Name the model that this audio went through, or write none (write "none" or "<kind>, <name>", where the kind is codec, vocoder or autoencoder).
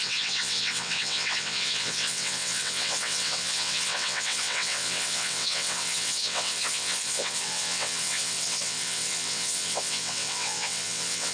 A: vocoder, WaveNeXt